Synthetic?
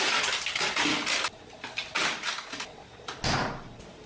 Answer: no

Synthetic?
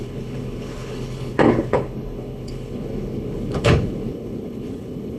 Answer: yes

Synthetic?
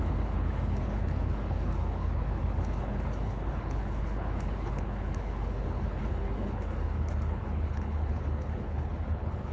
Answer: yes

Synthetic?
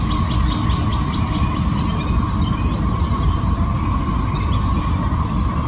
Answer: no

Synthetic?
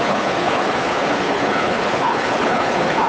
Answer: yes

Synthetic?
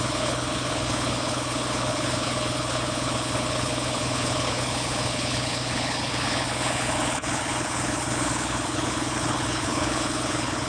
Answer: yes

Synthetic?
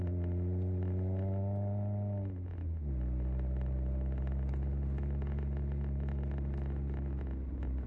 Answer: no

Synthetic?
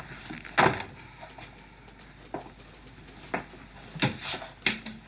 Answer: no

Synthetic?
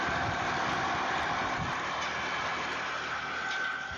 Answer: no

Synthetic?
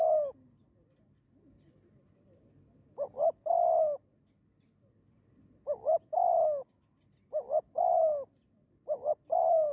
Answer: no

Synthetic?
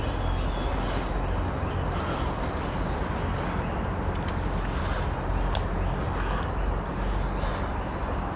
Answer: no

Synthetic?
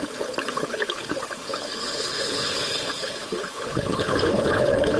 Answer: yes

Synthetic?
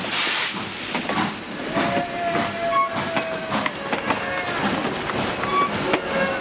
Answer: no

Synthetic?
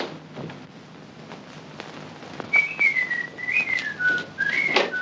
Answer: no